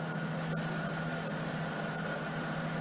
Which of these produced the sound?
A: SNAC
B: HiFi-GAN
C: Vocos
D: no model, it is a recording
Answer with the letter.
D